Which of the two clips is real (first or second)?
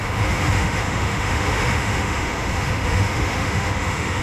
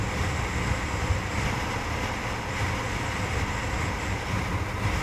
second